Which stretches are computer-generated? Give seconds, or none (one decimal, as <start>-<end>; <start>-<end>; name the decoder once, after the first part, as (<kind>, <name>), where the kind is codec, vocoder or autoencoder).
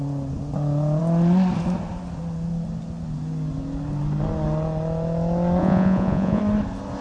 5.6-6.4 (vocoder, Vocos)